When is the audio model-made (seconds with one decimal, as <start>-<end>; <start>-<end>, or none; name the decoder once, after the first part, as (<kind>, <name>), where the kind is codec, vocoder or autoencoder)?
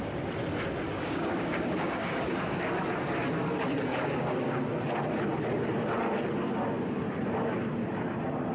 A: 0.9-2.7 (codec, DAC); 3.9-4.6